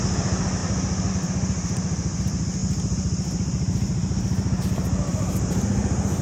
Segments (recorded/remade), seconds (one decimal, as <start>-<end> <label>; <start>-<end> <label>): 0.0-6.2 recorded